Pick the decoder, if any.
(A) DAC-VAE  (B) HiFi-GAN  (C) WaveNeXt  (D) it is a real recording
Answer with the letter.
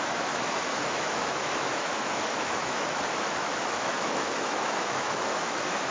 A